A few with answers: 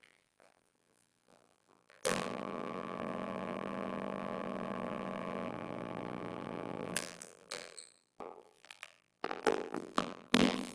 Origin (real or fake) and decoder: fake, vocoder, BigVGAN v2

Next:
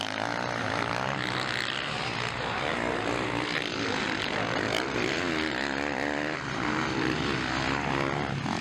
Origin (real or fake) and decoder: real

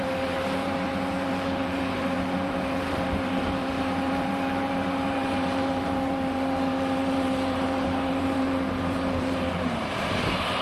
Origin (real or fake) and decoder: fake, vocoder, BigVGAN v2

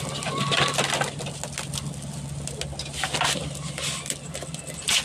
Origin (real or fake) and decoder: real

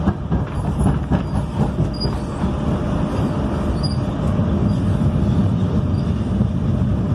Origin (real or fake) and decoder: real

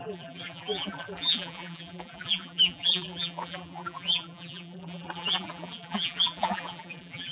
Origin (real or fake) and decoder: fake, vocoder, BigVGAN v2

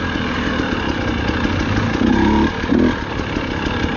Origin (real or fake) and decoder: real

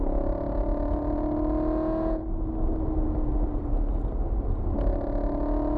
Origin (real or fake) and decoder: real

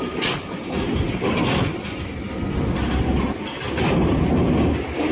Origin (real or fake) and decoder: real